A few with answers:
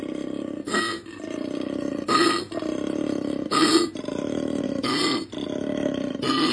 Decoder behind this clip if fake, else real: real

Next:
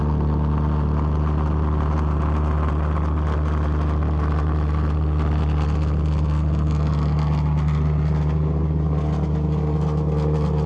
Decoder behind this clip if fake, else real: real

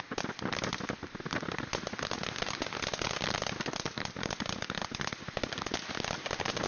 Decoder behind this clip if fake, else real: real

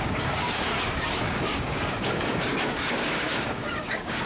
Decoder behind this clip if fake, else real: fake, codec, DAC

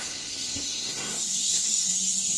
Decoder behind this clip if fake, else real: fake, codec, SNAC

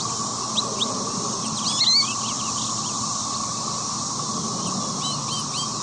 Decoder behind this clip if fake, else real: real